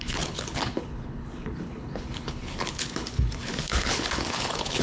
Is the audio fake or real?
fake